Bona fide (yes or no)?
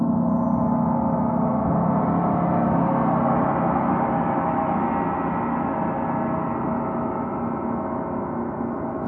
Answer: yes